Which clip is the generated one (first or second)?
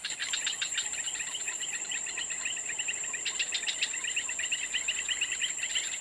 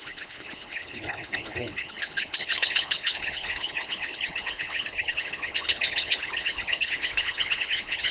second